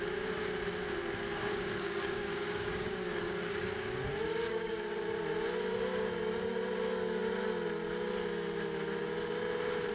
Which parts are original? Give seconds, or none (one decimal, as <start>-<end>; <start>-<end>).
0.0-1.3; 4.7-9.9